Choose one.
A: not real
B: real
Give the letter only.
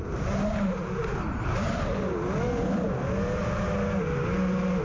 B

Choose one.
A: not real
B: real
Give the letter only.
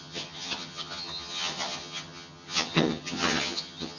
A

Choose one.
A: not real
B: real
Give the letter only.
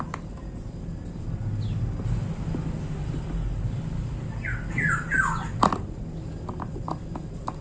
B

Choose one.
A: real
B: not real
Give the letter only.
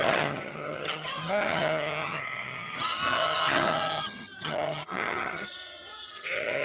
B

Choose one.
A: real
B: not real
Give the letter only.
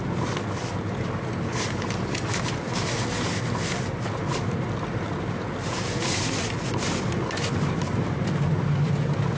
A